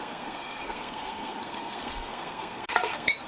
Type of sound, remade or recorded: remade